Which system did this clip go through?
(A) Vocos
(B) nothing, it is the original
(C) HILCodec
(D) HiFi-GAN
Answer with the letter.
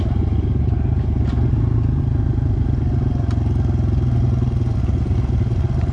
B